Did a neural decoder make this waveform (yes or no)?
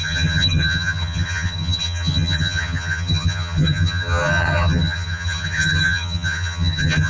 yes